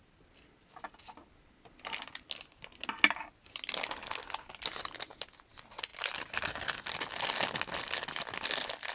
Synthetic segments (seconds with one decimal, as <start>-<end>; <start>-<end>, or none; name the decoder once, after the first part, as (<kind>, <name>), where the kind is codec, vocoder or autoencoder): none